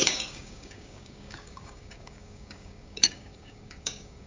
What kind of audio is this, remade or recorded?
remade